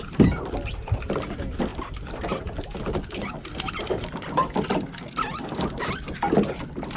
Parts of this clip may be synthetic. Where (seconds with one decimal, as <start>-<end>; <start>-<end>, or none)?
none